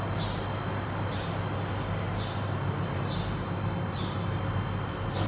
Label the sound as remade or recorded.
recorded